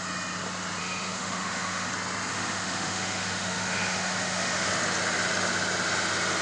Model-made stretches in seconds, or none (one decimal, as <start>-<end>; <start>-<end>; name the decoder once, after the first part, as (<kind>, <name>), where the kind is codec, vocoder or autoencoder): 0.8-1.9 (autoencoder, DAC-VAE); 2.3-4.7

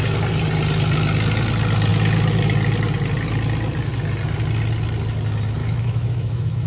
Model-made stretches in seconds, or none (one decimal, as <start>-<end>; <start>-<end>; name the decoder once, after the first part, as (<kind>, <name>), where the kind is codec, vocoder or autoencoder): 5.6-6.7 (autoencoder, DAC-VAE)

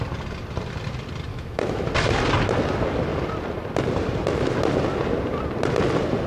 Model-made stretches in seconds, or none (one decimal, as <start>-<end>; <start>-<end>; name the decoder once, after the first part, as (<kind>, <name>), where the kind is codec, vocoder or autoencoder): 1.3-1.9 (autoencoder, DAC-VAE)

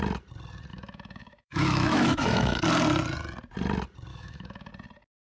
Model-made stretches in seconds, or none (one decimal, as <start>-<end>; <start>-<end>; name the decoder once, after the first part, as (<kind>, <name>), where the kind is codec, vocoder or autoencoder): 0.7-2.6 (autoencoder, DAC-VAE); 4.1-4.7

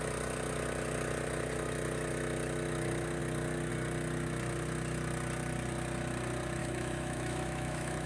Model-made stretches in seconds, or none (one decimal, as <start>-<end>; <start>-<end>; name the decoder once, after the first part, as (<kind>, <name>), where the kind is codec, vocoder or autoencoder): 6.6-8.1 (autoencoder, DAC-VAE)

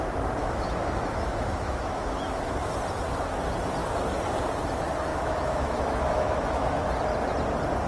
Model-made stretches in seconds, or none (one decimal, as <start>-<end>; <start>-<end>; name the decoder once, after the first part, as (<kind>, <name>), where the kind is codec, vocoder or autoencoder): 0.4-2.5 (autoencoder, DAC-VAE); 5.1-6.9